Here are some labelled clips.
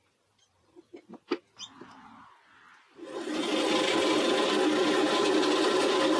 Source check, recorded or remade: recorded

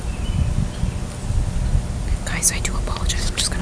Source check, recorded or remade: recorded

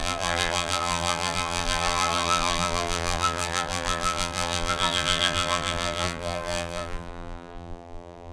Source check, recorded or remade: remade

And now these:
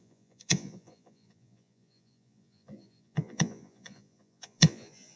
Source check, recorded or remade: remade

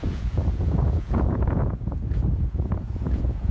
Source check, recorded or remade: remade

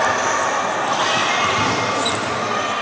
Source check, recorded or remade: recorded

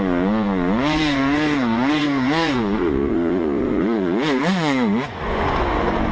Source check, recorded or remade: remade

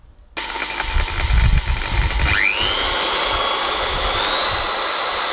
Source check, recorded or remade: recorded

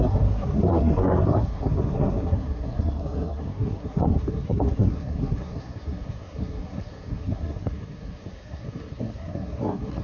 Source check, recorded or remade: remade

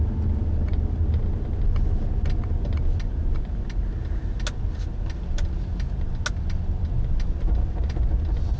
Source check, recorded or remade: recorded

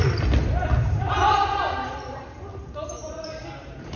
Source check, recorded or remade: recorded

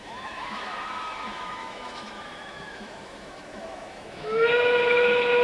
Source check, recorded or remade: remade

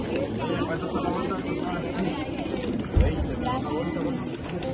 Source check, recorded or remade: recorded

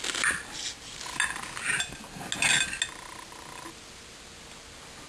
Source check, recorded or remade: recorded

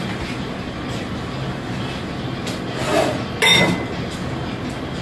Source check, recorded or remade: recorded